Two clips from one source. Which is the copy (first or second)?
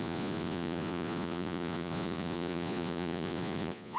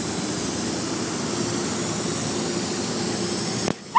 first